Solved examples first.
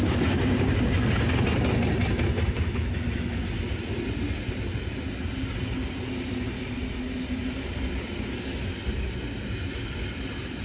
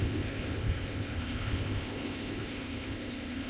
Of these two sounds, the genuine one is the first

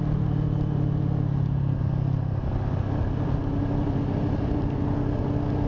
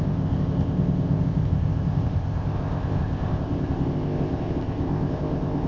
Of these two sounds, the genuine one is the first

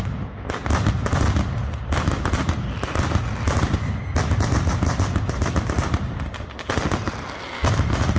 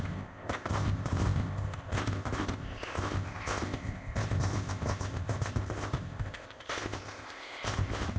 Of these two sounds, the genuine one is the first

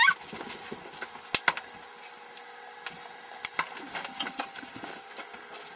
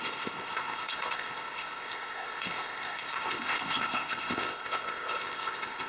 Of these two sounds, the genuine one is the first